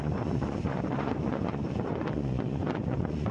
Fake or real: fake